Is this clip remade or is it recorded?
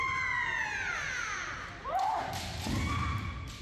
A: recorded